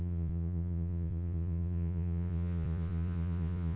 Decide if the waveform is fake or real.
fake